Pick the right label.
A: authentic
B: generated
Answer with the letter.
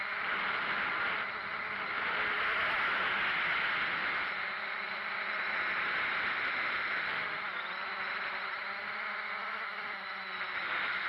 A